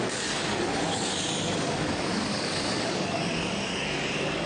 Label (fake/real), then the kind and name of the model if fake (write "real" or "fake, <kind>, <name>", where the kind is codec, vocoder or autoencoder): fake, codec, DAC